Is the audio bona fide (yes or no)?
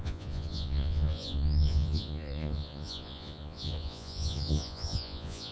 no